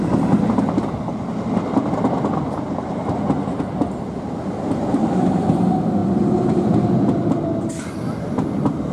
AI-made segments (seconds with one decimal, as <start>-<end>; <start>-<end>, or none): none